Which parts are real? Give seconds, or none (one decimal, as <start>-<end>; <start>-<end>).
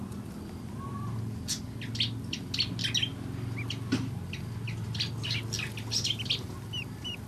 0.0-7.3